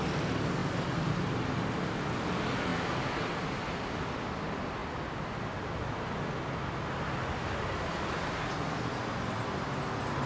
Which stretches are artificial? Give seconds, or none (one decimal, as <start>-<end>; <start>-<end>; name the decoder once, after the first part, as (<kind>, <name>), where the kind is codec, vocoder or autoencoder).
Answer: none